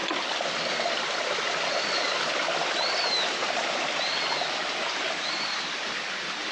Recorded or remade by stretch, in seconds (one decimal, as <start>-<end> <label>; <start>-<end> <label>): 0.0-6.5 recorded